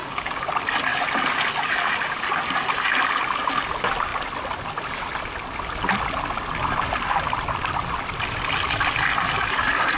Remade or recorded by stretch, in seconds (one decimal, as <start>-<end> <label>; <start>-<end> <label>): 0.0-0.5 remade; 0.5-10.0 recorded

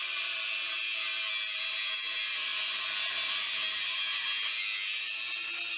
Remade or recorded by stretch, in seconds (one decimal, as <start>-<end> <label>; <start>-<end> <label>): 0.0-5.8 recorded

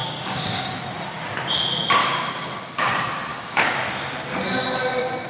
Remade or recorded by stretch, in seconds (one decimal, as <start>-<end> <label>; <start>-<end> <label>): 0.0-0.8 remade; 0.8-2.0 recorded; 2.0-2.9 remade; 2.9-3.3 recorded; 3.3-3.9 remade; 3.9-5.3 recorded

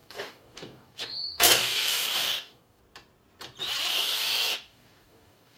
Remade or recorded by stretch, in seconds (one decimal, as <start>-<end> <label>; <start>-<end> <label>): 0.0-2.8 remade; 2.8-3.9 recorded; 3.9-5.6 remade